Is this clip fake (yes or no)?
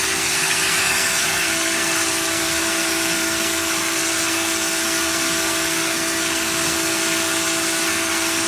yes